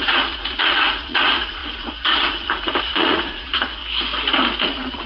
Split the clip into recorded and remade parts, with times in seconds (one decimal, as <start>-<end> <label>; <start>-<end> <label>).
0.0-3.8 remade; 3.8-4.6 recorded; 4.6-5.1 remade